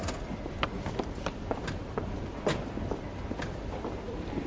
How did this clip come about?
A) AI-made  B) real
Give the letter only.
B